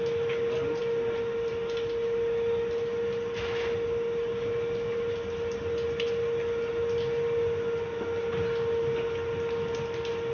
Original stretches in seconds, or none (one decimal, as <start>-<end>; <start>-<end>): 0.0-10.3